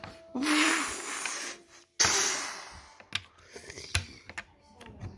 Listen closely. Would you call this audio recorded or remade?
recorded